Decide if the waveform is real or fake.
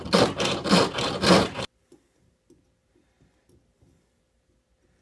real